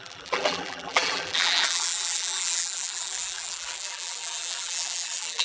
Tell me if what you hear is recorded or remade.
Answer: remade